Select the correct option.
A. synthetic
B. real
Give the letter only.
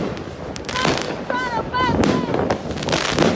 B